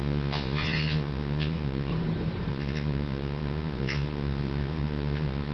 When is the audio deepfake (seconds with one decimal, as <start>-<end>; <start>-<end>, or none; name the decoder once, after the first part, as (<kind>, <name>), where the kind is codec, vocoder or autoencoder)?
0.0-1.9 (vocoder, Vocos); 2.5-5.5